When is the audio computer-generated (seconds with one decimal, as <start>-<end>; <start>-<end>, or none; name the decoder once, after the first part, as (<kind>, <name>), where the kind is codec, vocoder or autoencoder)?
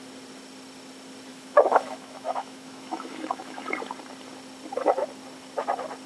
1.3-3.6 (autoencoder, DAC-VAE)